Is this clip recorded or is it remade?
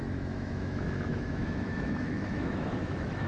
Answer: remade